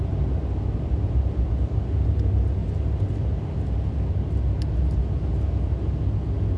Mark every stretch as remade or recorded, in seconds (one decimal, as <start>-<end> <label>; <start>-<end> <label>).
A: 0.0-6.6 recorded